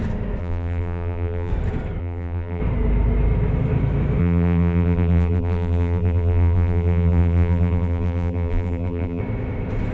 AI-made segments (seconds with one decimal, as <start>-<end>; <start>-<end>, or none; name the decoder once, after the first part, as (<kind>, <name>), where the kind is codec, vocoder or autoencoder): 0.4-1.5 (vocoder, BigVGAN v2); 2.0-2.6; 4.2-9.2